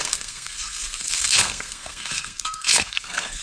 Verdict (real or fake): fake